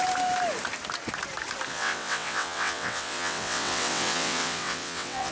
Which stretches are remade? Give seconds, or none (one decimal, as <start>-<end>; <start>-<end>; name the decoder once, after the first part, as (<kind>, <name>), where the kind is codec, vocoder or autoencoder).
1.7-5.3 (vocoder, WaveNeXt)